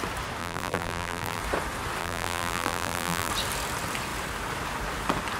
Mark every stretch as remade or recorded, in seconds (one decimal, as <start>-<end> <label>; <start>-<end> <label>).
0.0-0.4 recorded; 0.4-1.4 remade; 1.4-2.0 recorded; 2.0-3.3 remade; 3.3-5.4 recorded